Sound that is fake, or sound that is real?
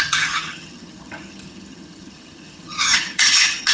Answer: fake